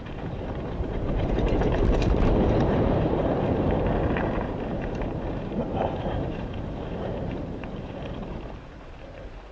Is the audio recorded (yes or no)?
no